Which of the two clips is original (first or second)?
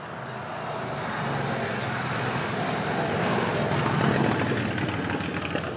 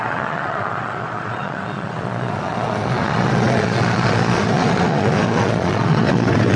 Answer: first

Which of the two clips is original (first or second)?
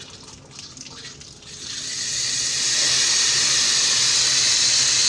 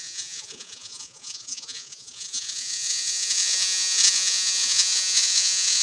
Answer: first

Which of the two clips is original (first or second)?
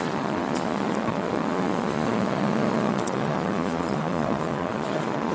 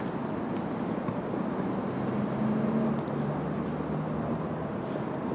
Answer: second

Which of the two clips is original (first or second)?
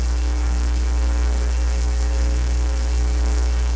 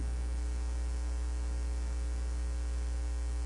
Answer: second